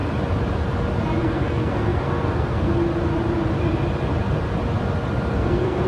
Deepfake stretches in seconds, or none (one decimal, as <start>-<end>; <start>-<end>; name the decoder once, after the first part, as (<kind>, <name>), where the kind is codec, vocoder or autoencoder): 1.2-2.9 (codec, SNAC); 5.3-5.9